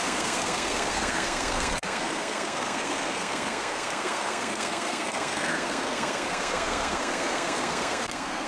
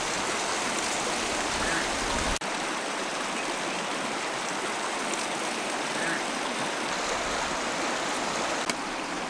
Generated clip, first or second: first